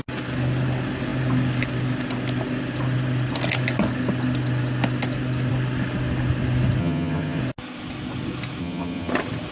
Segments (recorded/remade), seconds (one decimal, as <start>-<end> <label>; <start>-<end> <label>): 0.0-6.8 recorded; 6.8-7.4 remade; 7.4-8.6 recorded; 8.6-9.1 remade; 9.1-9.5 recorded